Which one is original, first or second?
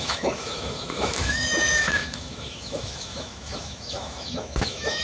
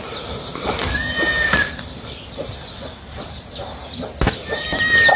second